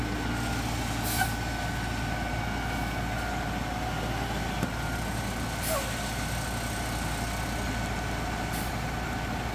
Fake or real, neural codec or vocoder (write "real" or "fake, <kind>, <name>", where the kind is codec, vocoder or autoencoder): real